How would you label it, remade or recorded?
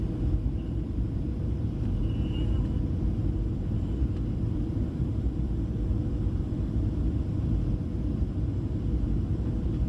recorded